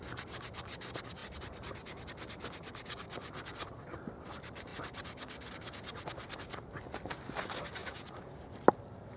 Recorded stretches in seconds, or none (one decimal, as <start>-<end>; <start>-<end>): 0.0-7.8; 8.5-9.2